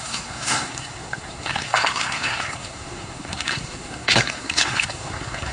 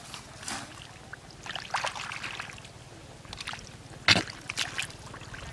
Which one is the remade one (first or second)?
first